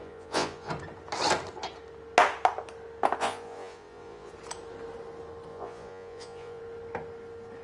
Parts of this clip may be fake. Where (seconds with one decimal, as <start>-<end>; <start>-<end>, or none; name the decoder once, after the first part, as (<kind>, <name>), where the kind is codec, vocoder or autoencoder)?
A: 0.0-0.7 (vocoder, Vocos); 3.2-4.3; 5.5-6.6